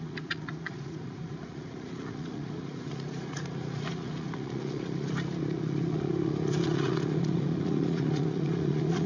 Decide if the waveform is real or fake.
fake